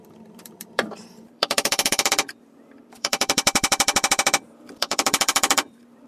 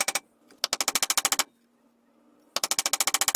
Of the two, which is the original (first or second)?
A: second